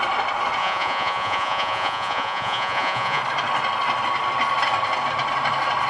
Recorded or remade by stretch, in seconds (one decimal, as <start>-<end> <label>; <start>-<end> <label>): 0.0-0.6 recorded; 0.6-3.2 remade; 3.2-5.9 recorded